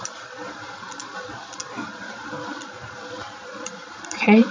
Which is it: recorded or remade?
remade